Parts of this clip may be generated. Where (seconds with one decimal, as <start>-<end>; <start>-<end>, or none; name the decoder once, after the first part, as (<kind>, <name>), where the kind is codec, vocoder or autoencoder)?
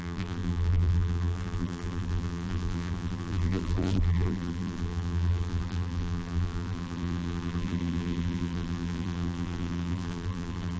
0.0-10.8 (vocoder, BigVGAN v2)